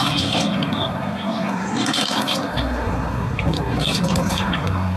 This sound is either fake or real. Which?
fake